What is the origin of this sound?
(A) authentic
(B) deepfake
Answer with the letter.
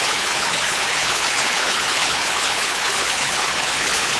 B